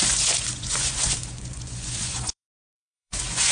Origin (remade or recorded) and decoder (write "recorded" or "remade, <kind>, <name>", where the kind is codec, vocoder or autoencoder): remade, vocoder, Vocos